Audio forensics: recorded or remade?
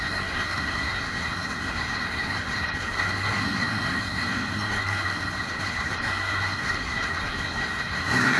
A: remade